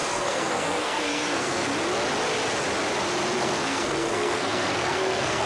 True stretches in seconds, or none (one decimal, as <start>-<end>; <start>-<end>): 1.7-3.4